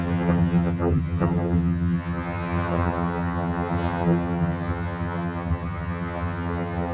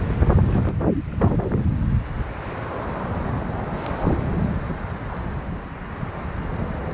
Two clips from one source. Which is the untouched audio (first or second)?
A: second